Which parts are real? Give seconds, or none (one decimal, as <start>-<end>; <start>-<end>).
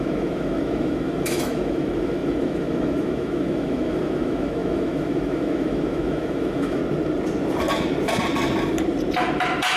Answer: 6.8-9.8